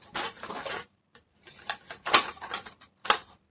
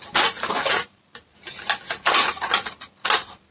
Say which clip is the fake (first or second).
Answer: first